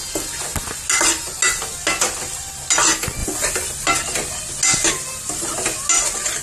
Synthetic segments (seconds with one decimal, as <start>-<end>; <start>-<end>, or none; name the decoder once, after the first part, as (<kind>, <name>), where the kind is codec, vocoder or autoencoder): none